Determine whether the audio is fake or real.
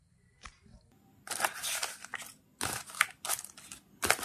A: real